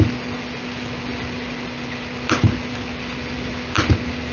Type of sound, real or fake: real